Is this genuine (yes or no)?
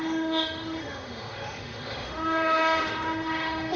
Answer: no